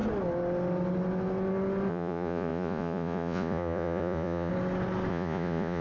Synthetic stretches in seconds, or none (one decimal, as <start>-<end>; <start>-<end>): 1.9-4.5; 5.1-5.8